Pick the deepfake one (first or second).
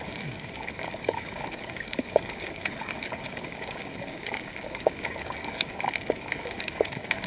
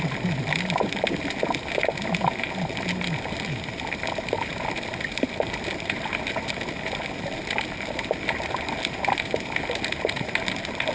first